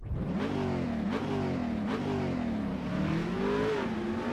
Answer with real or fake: real